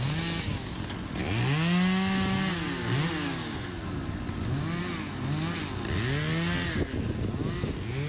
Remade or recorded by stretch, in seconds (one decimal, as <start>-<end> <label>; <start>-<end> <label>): 0.0-8.1 recorded